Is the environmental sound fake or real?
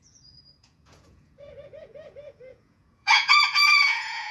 fake